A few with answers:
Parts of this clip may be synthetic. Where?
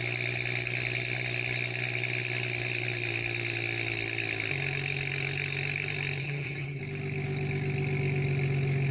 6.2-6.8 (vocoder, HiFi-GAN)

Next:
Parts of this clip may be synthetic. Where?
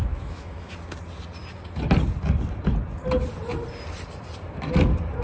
0.0-0.7 (autoencoder, DAC-VAE)